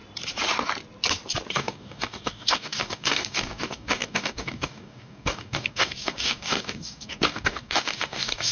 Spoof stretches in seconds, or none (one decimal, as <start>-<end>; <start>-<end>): 1.5-8.5